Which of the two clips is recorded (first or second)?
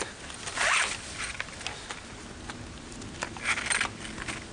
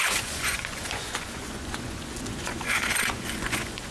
first